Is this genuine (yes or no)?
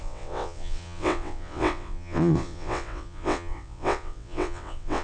no